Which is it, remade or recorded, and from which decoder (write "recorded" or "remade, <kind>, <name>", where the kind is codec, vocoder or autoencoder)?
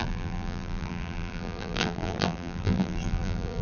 remade, vocoder, BigVGAN v2